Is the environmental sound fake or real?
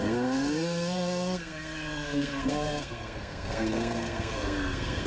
fake